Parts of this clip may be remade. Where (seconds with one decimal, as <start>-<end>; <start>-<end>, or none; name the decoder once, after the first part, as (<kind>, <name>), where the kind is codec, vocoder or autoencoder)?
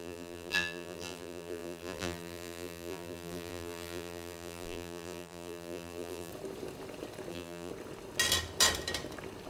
0.0-6.3 (vocoder, BigVGAN v2); 7.3-7.7